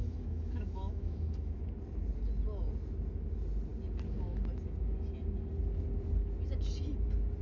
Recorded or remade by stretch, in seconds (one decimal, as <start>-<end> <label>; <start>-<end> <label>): 0.0-1.6 remade; 1.6-7.4 recorded